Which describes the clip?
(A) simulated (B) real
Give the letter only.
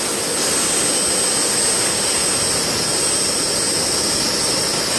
B